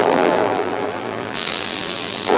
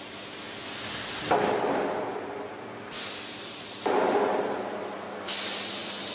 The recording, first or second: second